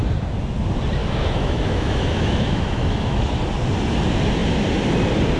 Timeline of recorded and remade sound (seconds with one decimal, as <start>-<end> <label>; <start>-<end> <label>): 0.0-1.0 recorded; 1.0-3.2 remade; 3.2-5.4 recorded